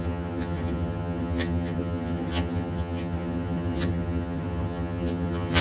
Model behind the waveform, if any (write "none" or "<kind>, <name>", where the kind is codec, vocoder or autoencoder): vocoder, HiFi-GAN